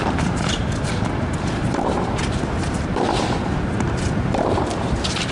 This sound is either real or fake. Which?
fake